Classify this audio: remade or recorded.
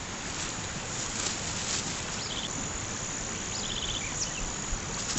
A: recorded